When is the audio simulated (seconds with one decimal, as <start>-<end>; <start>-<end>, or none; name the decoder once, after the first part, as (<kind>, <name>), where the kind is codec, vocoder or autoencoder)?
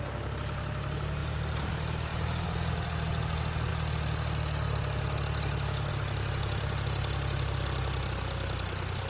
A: 1.2-1.7 (vocoder, BigVGAN v2); 2.1-2.7